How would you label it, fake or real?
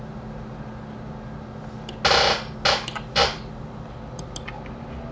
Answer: real